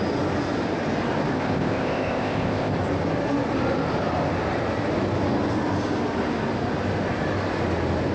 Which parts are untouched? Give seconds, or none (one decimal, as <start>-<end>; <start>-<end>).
0.0-1.3; 2.7-8.1